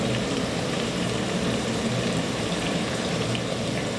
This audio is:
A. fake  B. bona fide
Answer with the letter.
A